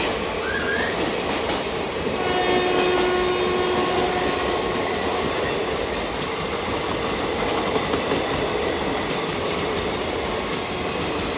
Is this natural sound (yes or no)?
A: yes